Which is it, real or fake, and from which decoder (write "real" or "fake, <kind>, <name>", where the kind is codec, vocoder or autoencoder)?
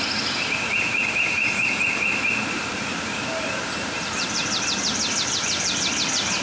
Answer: fake, vocoder, BigVGAN v2